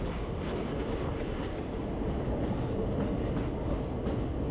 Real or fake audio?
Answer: real